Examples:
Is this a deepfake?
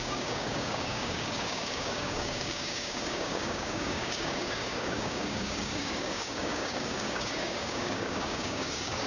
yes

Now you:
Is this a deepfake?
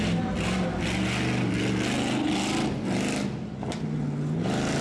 no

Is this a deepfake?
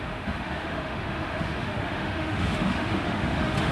yes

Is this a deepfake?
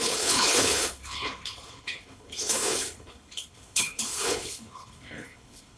yes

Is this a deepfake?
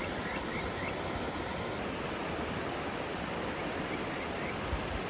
no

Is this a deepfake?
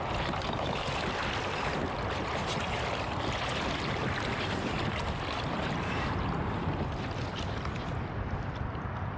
no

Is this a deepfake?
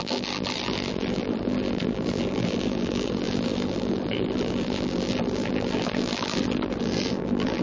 yes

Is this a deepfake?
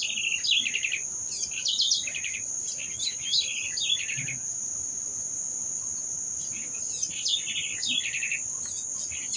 no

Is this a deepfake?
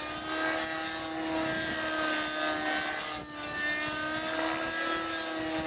no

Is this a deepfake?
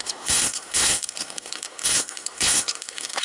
yes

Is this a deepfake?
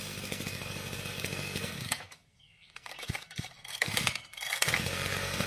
yes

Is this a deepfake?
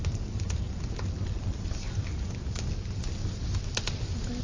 no